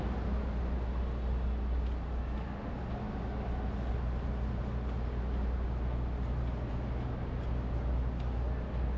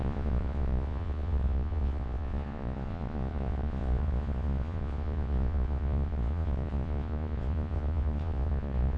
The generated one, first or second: second